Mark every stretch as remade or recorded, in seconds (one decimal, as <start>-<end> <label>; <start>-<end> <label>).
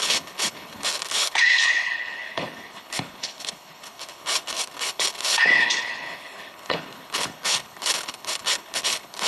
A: 0.0-9.3 remade